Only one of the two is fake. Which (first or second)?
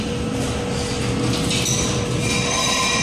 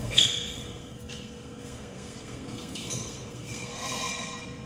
second